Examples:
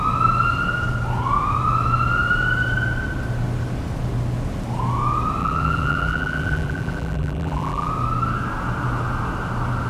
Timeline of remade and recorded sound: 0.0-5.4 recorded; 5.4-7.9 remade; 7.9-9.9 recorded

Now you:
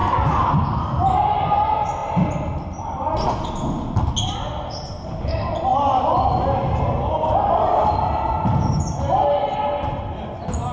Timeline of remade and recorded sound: 0.0-0.5 remade; 0.5-10.7 recorded